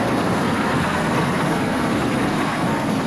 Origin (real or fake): fake